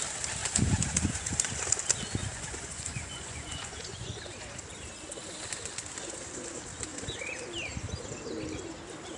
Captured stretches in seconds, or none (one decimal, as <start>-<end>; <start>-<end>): 0.0-0.4; 1.3-2.2; 4.4-9.2